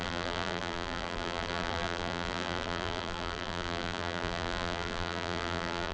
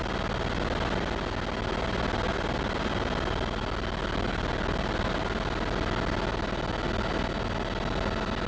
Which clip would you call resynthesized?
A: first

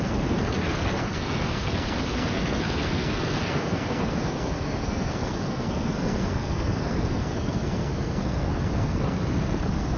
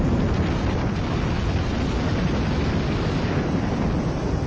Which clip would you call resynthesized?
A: first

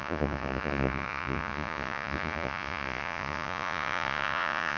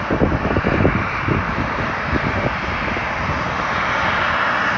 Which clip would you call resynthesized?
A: first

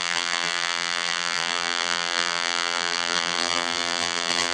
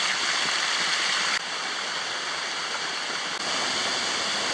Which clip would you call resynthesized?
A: first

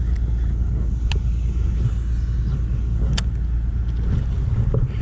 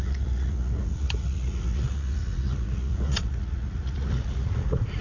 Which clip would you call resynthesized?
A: second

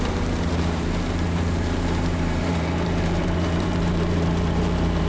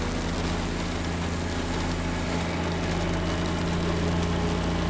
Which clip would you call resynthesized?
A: first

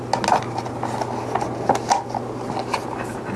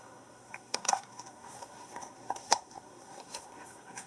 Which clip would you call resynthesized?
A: second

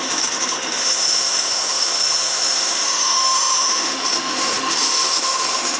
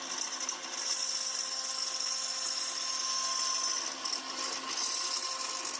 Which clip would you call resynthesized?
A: first